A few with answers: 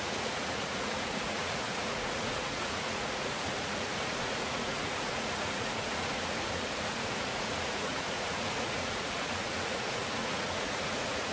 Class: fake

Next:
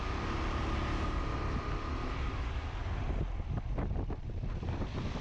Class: real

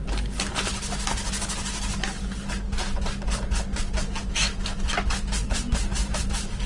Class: real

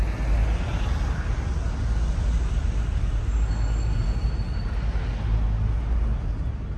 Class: real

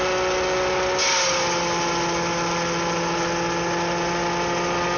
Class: real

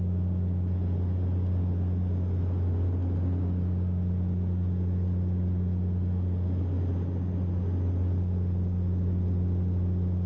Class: real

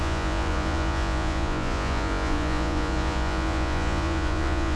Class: fake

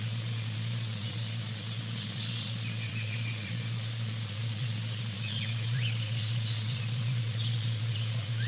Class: fake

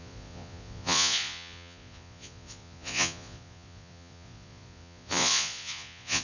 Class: fake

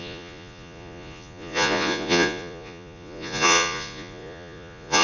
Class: fake